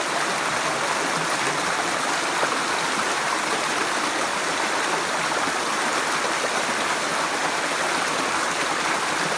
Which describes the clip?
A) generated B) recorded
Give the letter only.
B